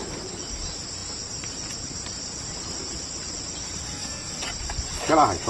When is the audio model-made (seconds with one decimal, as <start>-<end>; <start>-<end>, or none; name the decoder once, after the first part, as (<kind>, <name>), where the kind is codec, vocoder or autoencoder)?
3.8-4.4 (codec, SNAC)